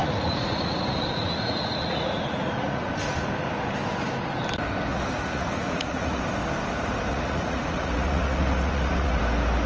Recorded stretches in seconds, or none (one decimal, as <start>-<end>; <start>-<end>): 2.9-4.9; 6.2-7.1; 9.2-9.7